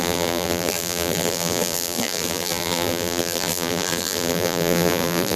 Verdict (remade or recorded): remade